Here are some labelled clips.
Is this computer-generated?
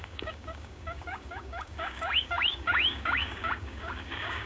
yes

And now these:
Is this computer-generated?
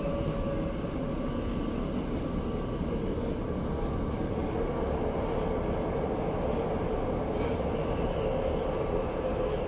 no